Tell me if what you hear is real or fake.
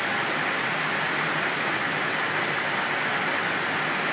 real